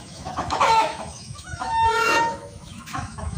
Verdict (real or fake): fake